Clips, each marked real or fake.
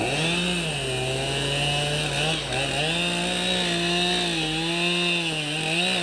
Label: real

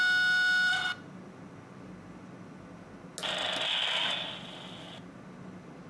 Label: real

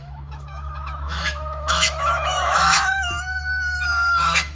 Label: fake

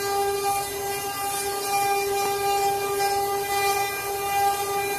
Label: real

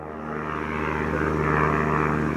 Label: real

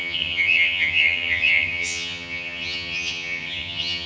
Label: fake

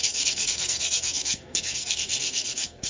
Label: fake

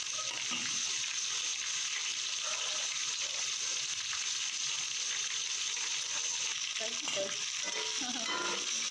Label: real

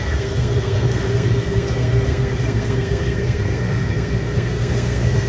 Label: fake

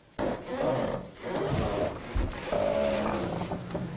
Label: real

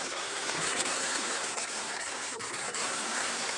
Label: fake